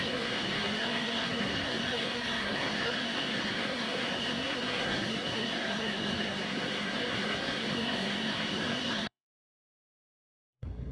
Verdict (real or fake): fake